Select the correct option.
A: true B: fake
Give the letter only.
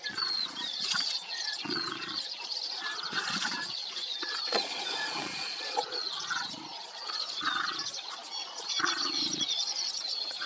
B